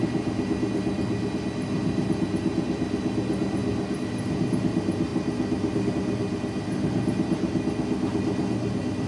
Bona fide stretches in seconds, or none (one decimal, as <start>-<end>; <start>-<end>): 0.0-9.1